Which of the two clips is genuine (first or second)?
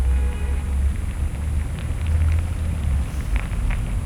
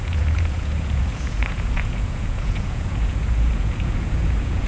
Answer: first